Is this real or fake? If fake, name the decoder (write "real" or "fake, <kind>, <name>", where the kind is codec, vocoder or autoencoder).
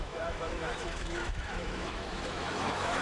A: fake, autoencoder, DAC-VAE